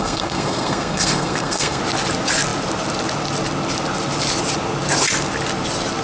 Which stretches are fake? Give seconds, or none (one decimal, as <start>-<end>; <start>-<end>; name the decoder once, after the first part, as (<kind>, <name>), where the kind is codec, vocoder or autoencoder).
0.0-1.8 (codec, SNAC)